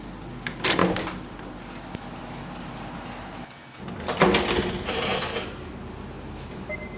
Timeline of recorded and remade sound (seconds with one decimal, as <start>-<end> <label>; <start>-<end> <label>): 0.0-7.0 recorded